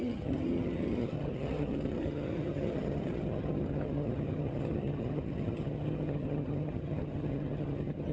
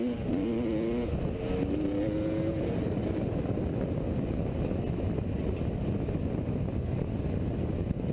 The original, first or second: second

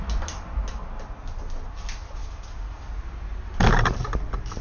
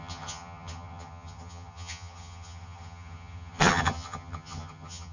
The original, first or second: first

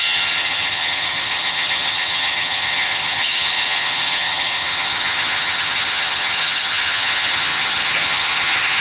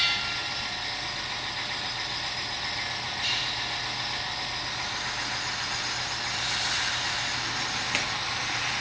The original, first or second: second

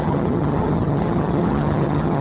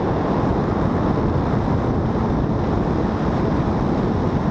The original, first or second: second